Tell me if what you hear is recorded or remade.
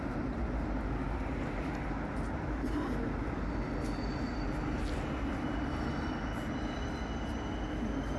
recorded